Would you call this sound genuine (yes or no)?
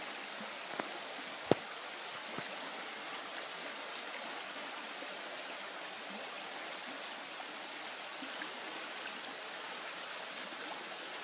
yes